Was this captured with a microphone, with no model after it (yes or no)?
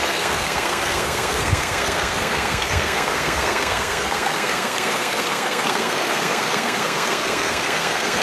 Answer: no